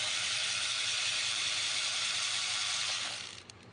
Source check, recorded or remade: remade